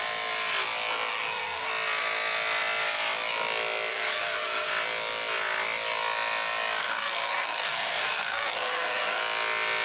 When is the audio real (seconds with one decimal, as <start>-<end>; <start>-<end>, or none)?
0.0-1.1; 1.7-3.9; 4.7-6.8; 9.2-9.8